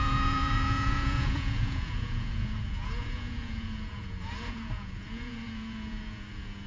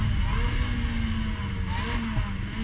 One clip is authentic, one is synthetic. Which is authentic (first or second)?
second